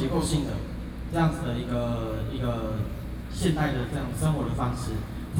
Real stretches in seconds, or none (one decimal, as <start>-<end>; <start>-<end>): 0.0-5.4